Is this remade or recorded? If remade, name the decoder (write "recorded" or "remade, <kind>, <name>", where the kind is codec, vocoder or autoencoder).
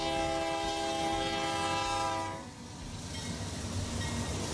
recorded